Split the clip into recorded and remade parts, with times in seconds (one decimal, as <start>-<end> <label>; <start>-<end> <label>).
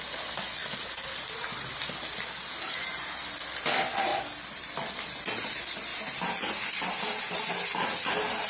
0.0-8.5 recorded